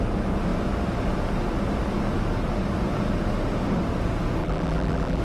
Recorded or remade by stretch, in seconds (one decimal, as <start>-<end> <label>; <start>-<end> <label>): 0.0-4.4 recorded; 4.4-5.2 remade